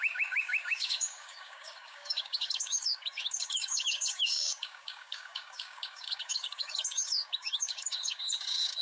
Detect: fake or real fake